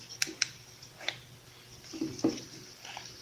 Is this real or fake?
real